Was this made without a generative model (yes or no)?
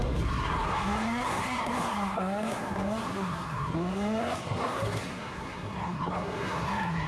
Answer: no